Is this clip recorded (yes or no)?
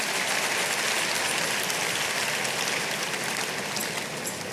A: yes